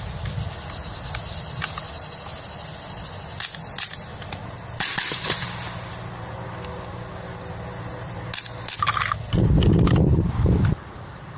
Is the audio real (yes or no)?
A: yes